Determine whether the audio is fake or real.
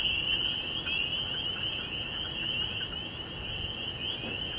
real